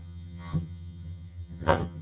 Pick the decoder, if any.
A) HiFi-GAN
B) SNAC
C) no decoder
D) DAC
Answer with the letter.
A